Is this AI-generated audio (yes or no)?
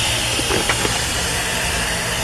no